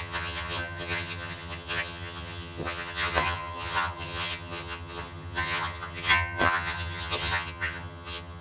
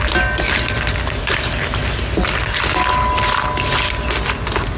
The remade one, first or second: first